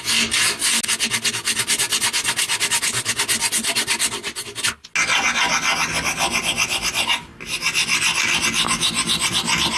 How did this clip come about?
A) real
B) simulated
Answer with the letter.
A